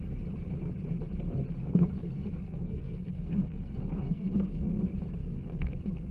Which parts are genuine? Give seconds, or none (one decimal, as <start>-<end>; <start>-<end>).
0.0-1.6; 4.7-5.2